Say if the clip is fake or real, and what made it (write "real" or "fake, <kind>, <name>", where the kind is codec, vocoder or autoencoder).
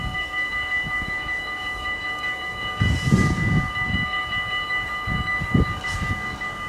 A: fake, codec, DAC